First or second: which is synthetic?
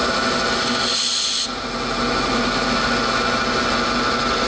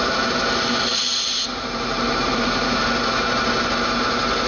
second